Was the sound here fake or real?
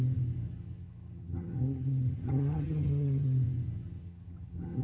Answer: fake